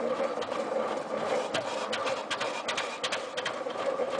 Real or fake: real